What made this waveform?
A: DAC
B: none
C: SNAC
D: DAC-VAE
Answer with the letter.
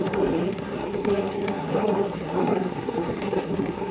C